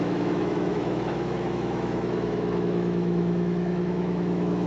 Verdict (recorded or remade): remade